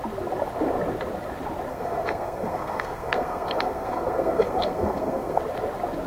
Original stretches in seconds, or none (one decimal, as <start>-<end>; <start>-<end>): 0.0-1.7; 5.4-6.1